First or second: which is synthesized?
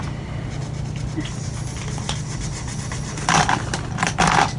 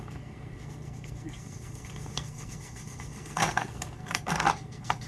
second